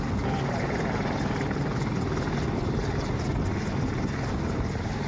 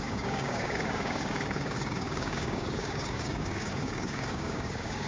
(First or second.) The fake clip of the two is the second